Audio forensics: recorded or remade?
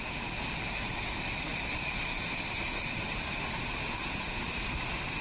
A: recorded